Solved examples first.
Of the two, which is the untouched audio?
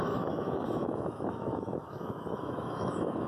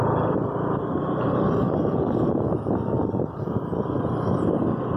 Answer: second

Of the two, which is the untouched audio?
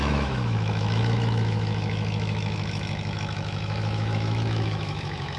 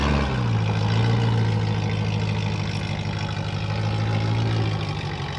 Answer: second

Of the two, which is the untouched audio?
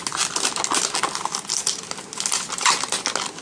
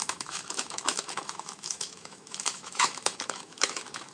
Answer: first